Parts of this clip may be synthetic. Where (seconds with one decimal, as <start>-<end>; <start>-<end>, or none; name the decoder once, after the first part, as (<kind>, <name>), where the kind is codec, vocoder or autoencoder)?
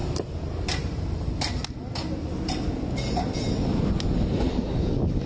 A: 4.5-5.3 (codec, DAC)